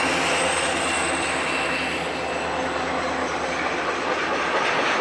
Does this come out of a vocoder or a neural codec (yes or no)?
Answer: no